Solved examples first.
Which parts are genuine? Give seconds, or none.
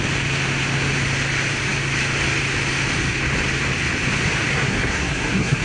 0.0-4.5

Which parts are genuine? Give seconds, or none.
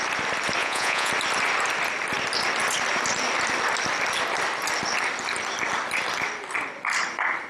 0.0-0.6; 1.1-7.5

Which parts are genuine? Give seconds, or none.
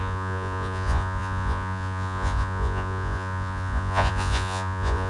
none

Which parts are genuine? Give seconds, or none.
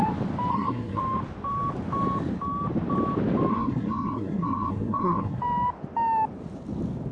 0.0-0.5; 1.0-3.5; 5.4-7.1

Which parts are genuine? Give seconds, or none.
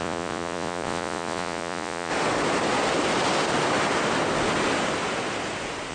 2.1-5.9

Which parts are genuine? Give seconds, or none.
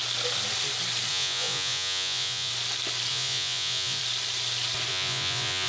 0.0-1.1; 2.5-3.1; 4.0-4.9